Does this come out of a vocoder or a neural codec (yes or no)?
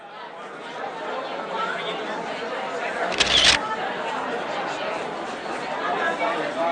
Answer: no